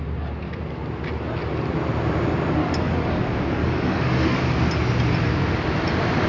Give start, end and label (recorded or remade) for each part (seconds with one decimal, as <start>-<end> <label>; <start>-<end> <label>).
0.0-2.6 recorded; 2.6-3.2 remade; 3.2-3.6 recorded; 3.6-4.4 remade; 4.4-6.3 recorded